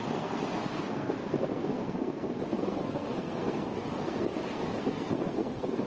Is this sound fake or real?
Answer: fake